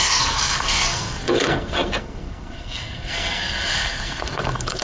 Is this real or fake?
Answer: fake